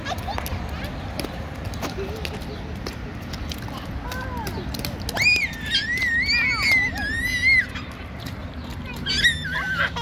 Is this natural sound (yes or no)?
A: yes